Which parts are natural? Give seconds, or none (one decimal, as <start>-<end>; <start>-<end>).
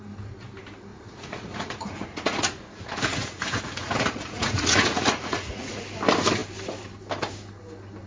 0.0-0.9; 5.8-8.1